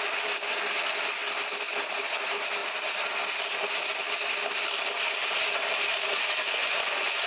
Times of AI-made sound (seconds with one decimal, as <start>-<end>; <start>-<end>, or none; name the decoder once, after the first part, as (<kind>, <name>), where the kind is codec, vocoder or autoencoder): 6.6-7.3 (vocoder, Vocos)